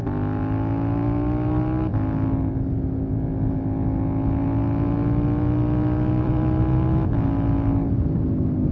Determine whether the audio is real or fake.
real